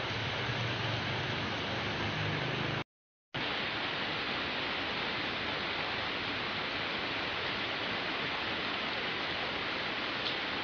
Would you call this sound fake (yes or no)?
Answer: no